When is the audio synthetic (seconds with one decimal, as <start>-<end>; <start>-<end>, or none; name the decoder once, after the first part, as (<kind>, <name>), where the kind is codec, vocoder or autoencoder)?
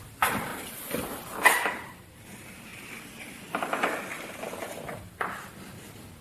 0.5-2.0 (vocoder, BigVGAN v2); 2.7-4.8